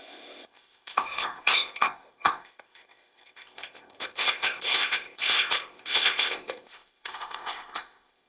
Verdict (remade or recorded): remade